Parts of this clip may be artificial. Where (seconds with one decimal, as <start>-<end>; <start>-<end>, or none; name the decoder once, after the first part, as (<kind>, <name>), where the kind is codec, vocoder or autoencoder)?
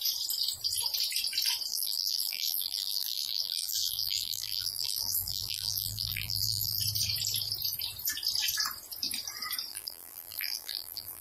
1.7-6.8 (vocoder, BigVGAN v2); 9.7-11.2